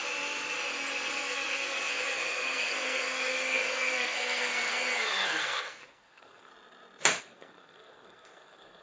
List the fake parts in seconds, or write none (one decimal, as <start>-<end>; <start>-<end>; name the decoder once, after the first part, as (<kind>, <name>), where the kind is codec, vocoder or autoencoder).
1.1-6.5 (codec, SNAC); 7.2-8.8